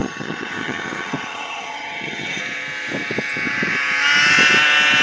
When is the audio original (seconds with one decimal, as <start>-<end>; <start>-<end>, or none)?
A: 2.4-5.0